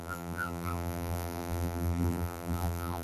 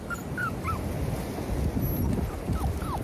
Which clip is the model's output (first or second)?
first